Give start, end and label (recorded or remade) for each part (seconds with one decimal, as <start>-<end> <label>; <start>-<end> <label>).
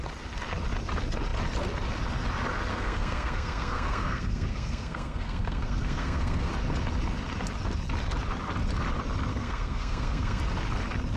0.0-2.7 recorded; 2.7-6.5 remade; 6.5-9.3 recorded; 9.3-10.4 remade; 10.4-11.2 recorded